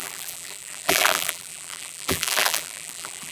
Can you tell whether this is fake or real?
fake